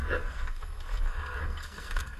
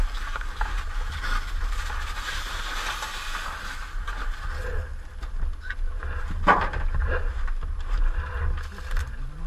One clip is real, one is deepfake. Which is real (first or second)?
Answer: second